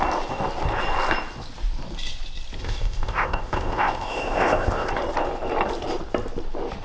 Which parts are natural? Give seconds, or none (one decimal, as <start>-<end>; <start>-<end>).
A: 0.0-2.6; 4.9-6.8